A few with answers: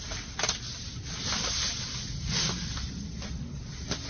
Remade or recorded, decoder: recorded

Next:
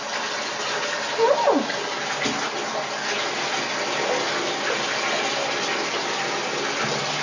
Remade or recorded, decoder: recorded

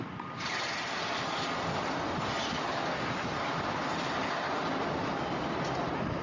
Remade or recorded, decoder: recorded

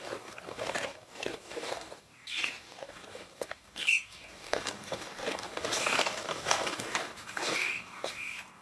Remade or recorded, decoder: remade, codec, DAC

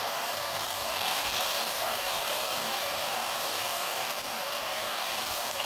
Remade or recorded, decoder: remade, codec, DAC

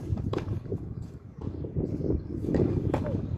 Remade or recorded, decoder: remade, codec, DAC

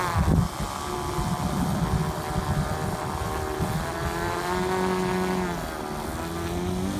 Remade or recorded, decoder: recorded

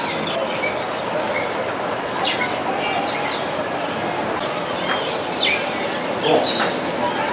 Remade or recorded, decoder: recorded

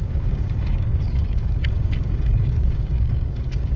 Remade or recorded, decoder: remade, codec, DAC